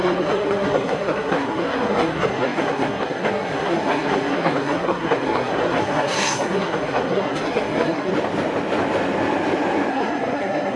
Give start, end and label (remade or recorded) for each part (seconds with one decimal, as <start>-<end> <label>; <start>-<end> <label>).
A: 0.0-8.1 remade; 8.1-9.9 recorded; 9.9-10.8 remade